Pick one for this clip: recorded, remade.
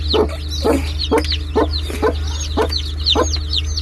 recorded